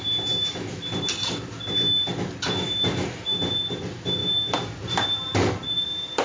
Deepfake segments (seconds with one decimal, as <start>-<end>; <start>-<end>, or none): none